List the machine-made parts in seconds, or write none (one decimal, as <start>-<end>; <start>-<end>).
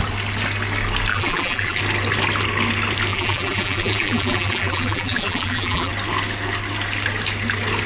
1.1-1.8; 3.1-5.9